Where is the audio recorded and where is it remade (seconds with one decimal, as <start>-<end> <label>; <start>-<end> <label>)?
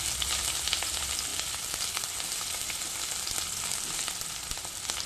0.0-5.1 recorded